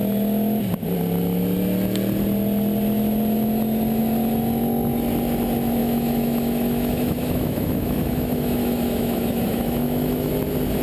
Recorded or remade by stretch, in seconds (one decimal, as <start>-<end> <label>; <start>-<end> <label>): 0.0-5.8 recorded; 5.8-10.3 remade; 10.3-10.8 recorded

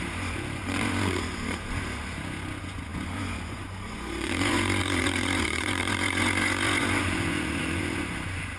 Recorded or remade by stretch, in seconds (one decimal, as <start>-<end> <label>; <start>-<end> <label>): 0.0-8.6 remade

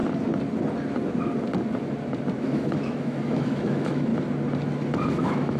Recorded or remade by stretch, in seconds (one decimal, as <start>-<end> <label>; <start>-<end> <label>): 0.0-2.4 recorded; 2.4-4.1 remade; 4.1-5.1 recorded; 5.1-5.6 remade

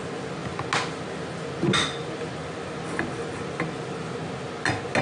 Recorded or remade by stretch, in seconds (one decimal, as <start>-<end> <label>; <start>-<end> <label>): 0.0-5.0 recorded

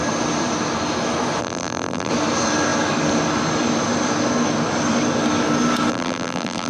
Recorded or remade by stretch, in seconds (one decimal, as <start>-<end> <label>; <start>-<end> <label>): 0.0-1.4 recorded; 1.4-2.1 remade; 2.1-5.9 recorded; 5.9-6.7 remade

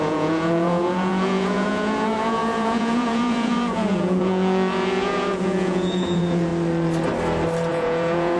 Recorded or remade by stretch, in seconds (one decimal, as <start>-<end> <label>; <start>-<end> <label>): 0.0-6.5 remade; 6.5-7.7 recorded; 7.7-8.4 remade